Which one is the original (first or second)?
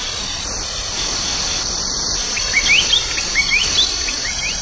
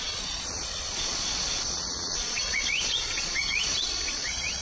first